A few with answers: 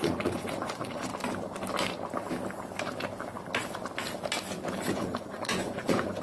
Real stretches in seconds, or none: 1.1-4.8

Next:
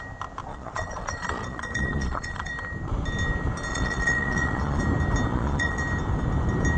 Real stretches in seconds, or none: 0.0-0.5; 2.5-3.7; 4.8-5.3; 5.8-6.8